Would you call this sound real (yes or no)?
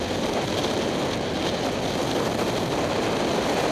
yes